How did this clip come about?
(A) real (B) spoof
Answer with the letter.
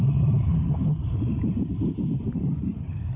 B